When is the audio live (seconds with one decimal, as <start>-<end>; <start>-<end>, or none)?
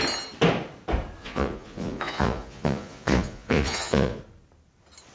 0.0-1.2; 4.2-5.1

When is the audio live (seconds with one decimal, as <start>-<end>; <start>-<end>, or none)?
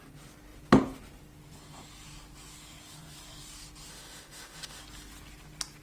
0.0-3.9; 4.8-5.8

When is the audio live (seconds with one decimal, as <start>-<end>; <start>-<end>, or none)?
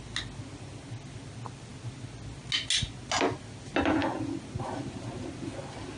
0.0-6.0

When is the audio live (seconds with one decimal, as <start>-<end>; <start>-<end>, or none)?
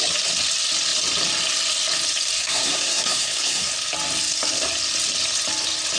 0.0-2.4; 3.7-6.0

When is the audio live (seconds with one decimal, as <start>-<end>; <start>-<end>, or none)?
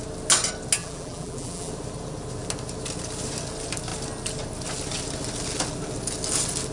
0.0-0.8; 1.7-6.7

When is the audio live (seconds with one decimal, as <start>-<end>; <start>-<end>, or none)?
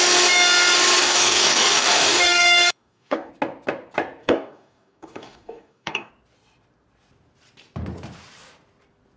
0.0-1.0; 3.3-4.2; 6.1-9.2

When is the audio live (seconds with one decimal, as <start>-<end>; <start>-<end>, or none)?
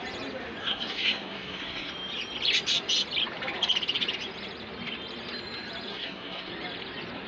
0.0-0.6; 1.9-5.9; 6.5-7.3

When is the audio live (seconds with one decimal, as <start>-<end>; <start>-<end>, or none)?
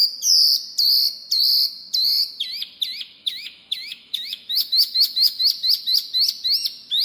0.0-3.2; 5.4-7.0